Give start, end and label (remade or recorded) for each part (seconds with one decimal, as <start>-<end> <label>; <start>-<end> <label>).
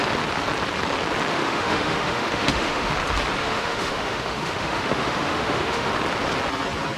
0.0-1.3 recorded; 1.3-2.9 remade; 2.9-3.4 recorded; 3.4-5.9 remade; 5.9-7.0 recorded